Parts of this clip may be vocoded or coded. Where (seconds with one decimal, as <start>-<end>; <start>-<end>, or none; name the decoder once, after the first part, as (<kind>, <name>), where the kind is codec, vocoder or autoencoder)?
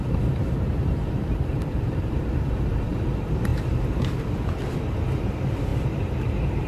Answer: 0.0-6.7 (vocoder, BigVGAN v2)